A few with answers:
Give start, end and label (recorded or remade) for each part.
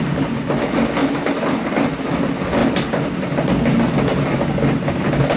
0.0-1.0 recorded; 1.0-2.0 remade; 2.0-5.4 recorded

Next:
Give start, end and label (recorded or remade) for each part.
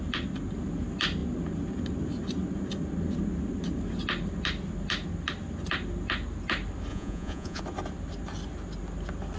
0.0-6.9 recorded; 6.9-7.6 remade; 7.6-9.4 recorded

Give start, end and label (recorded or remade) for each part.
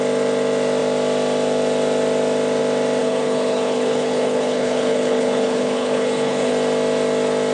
0.0-3.0 recorded; 3.0-6.5 remade; 6.5-7.5 recorded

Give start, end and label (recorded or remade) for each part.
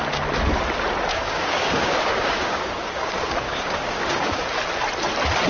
0.0-1.1 recorded; 1.1-4.4 remade; 4.4-5.5 recorded